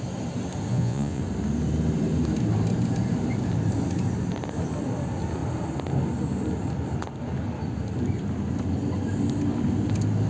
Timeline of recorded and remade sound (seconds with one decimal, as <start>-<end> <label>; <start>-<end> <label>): 0.0-0.7 recorded; 0.7-1.2 remade; 1.2-10.3 recorded